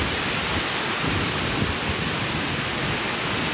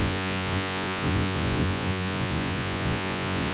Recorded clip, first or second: first